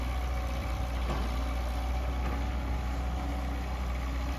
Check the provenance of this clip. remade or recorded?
remade